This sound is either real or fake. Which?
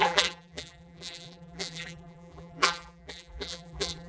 fake